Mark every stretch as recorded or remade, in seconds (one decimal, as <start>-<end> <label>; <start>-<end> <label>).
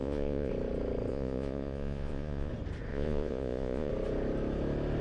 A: 0.0-0.5 remade; 0.5-1.1 recorded; 1.1-2.5 remade; 2.5-2.9 recorded; 2.9-3.9 remade; 3.9-5.0 recorded